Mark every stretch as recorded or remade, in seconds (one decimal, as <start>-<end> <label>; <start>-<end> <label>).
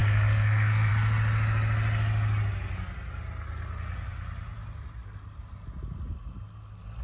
0.0-0.9 remade; 0.9-7.0 recorded